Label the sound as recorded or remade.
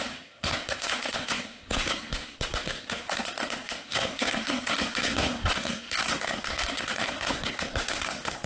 remade